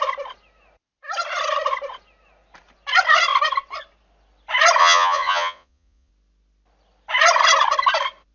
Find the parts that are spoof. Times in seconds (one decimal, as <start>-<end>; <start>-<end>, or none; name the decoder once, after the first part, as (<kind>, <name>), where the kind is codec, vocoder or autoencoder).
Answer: 4.8-6.1 (vocoder, Vocos)